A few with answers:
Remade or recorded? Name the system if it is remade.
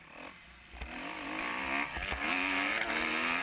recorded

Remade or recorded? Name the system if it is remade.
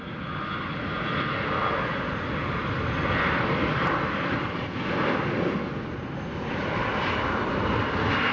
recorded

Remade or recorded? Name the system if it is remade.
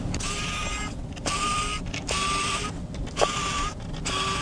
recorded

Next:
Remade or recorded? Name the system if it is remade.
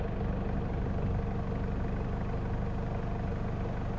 recorded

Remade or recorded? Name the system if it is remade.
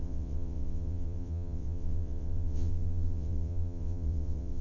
remade, vocoder, WaveNeXt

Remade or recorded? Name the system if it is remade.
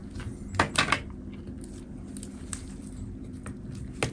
recorded